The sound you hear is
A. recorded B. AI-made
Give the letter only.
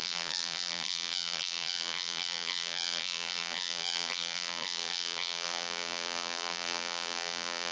B